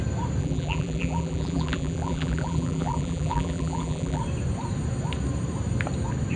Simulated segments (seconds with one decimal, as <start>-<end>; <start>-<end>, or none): 0.4-4.2